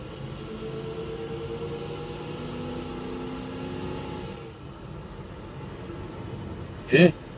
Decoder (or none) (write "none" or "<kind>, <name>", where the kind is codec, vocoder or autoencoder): none